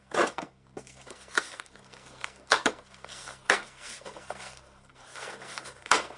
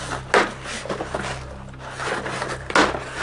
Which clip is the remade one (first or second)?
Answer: first